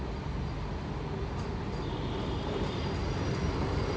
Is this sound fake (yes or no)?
no